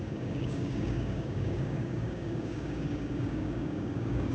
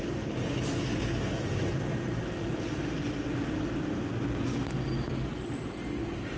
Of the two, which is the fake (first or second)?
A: first